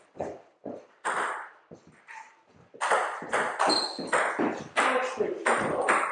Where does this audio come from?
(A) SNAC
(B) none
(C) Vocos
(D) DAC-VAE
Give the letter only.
B